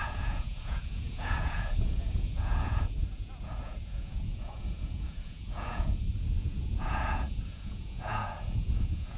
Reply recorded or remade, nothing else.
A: remade